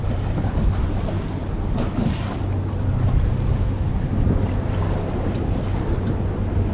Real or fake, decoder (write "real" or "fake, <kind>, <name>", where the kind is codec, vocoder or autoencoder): real